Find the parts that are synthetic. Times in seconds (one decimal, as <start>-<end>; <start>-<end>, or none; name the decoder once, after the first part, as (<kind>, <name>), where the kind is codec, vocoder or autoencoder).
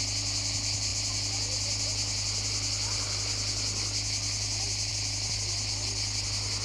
none